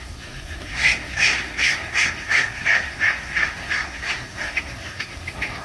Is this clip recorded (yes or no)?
no